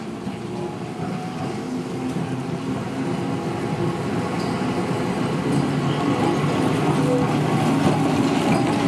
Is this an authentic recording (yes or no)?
yes